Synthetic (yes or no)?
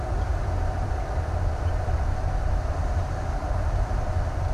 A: no